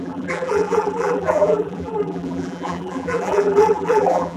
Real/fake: fake